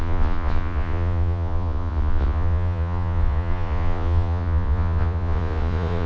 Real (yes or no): no